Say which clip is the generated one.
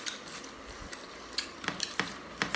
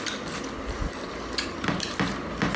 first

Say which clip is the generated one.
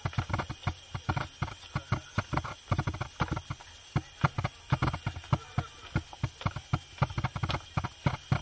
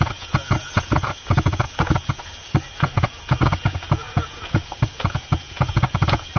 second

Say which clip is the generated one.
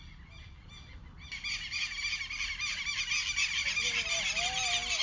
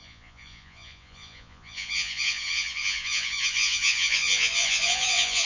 second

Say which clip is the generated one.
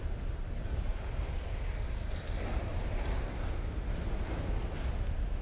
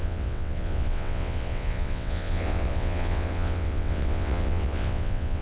second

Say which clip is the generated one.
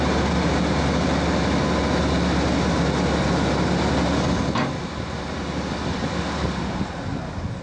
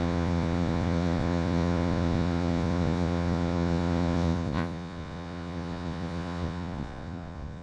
second